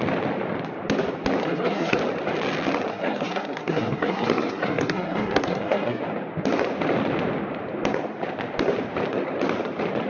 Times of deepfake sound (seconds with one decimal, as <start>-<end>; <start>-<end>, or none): 1.4-2.0; 2.9-6.0